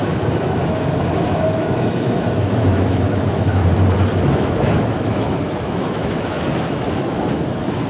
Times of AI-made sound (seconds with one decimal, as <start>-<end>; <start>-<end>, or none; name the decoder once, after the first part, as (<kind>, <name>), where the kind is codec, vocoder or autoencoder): 0.0-3.6 (autoencoder, DAC-VAE); 4.2-7.9